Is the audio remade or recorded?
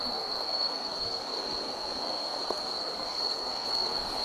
remade